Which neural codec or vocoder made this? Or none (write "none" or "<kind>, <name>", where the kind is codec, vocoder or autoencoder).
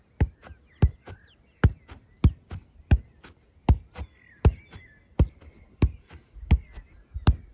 none